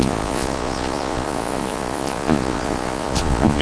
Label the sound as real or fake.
fake